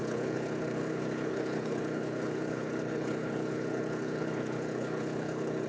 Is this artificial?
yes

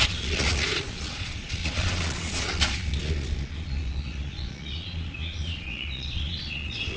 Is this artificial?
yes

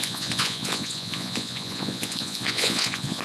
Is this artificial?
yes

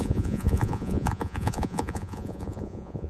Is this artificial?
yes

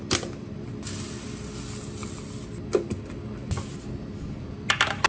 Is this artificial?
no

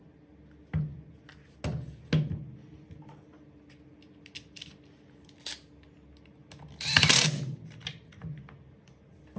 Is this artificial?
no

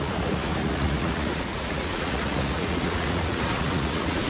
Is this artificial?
yes